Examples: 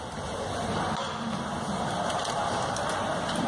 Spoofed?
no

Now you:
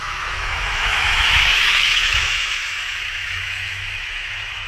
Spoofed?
yes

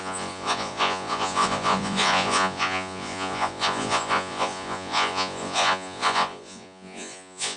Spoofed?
yes